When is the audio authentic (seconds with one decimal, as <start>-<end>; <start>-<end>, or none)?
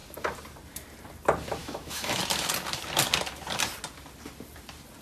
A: 0.0-1.6; 2.2-5.0